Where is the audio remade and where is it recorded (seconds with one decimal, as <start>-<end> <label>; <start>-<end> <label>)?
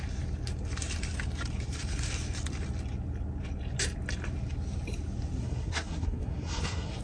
0.0-5.4 recorded; 5.4-7.0 remade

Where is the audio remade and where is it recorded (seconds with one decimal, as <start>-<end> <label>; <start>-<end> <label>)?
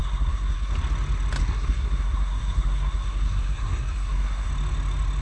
0.0-0.7 remade; 0.7-1.4 recorded; 1.4-4.5 remade; 4.5-5.2 recorded